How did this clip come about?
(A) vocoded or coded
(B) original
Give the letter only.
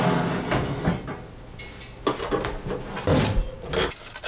B